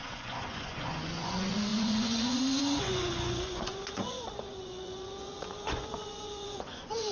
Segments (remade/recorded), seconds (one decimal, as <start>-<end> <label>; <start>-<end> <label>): 0.0-7.1 remade